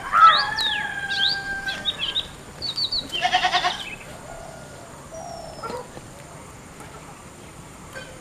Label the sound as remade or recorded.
remade